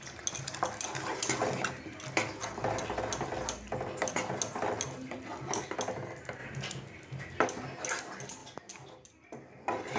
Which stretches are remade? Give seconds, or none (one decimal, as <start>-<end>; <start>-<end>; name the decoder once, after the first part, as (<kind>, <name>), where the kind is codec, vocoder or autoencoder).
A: none